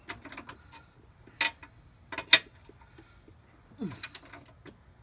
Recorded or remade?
recorded